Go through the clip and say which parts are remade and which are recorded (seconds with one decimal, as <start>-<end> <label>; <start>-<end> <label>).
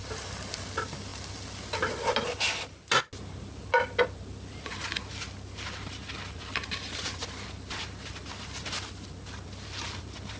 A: 0.0-10.4 recorded